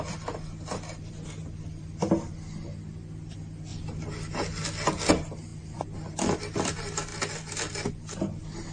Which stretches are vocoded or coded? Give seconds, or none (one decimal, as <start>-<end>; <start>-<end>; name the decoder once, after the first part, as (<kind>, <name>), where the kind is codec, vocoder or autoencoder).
none